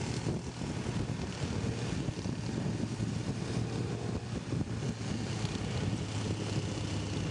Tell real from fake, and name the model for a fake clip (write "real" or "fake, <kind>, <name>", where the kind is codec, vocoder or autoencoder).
real